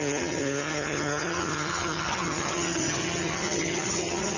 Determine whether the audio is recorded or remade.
remade